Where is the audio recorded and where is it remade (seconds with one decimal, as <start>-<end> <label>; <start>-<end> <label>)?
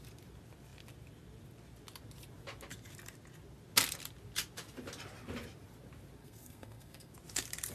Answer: 0.0-6.2 recorded; 6.2-7.1 remade; 7.1-7.7 recorded